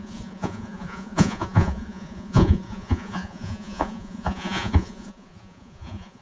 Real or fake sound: fake